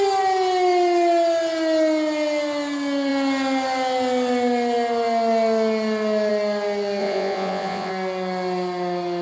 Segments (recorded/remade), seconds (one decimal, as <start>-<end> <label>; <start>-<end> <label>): 0.0-7.0 recorded; 7.0-7.9 remade; 7.9-9.2 recorded